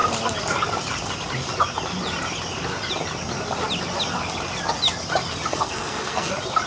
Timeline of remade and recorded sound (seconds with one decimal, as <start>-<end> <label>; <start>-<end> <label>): 0.0-5.5 recorded; 5.5-6.3 remade; 6.3-6.7 recorded